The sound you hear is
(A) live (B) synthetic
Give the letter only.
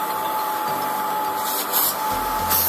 A